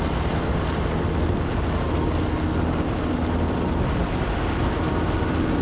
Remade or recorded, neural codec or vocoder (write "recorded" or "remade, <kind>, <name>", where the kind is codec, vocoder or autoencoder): recorded